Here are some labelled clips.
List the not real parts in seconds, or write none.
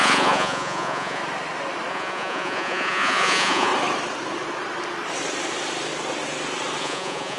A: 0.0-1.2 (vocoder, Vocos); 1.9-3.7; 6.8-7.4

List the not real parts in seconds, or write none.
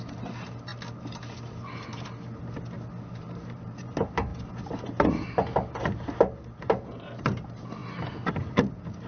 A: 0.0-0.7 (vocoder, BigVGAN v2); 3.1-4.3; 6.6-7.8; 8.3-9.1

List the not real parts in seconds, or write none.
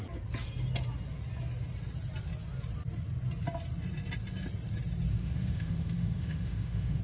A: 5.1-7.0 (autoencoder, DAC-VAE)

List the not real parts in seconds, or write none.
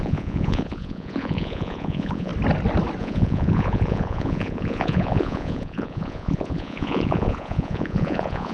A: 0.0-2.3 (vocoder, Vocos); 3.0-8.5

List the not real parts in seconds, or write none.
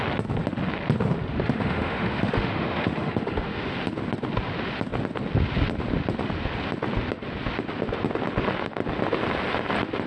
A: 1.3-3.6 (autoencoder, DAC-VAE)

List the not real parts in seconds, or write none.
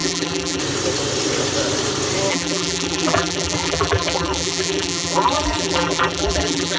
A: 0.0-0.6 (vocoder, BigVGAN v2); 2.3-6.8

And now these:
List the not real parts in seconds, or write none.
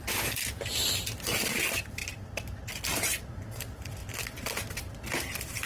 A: none